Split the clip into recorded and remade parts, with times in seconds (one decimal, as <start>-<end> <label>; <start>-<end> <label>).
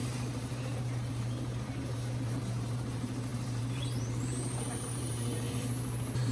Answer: 0.0-6.3 remade